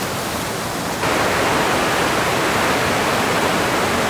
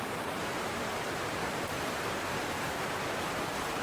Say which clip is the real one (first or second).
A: first